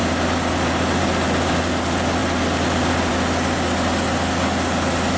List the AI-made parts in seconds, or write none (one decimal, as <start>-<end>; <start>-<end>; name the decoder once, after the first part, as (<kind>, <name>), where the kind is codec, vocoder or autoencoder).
none

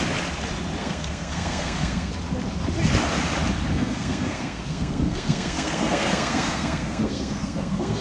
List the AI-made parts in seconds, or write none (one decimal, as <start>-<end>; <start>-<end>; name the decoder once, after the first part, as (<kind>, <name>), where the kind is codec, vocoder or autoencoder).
0.8-2.1 (codec, SNAC); 3.7-8.0

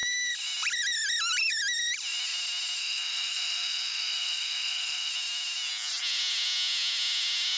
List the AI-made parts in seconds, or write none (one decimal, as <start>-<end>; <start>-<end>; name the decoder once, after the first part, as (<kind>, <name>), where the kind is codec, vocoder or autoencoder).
2.8-5.1 (codec, SNAC)

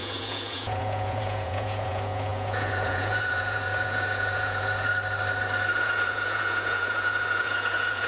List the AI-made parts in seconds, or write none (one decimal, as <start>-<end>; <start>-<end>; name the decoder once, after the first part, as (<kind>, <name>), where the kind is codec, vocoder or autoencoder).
0.0-4.9 (vocoder, Vocos); 5.7-8.1

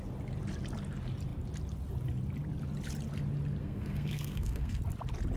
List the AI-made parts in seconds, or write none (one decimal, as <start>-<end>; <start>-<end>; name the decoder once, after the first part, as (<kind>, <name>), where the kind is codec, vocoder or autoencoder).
3.6-4.8 (codec, SNAC)

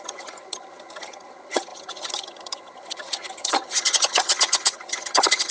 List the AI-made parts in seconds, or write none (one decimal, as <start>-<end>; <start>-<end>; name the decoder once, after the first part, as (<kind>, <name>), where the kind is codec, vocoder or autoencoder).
0.0-5.5 (vocoder, HiFi-GAN)

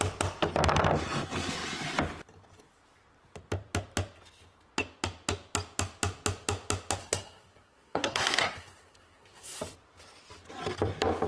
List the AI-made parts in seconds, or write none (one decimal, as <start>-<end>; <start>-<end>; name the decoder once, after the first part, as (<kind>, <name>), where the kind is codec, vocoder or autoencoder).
7.0-9.6 (codec, SNAC)

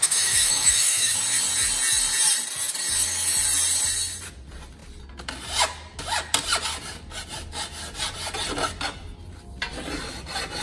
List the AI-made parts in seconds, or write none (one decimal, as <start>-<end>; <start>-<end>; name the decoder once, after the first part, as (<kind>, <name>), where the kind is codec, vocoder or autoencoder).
0.0-1.2 (autoencoder, DAC-VAE)